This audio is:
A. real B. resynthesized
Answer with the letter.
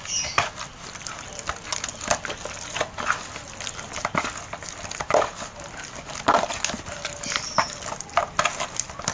A